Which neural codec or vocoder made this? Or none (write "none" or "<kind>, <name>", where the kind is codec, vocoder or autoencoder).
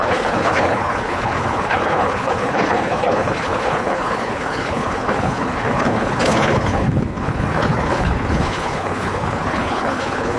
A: codec, HILCodec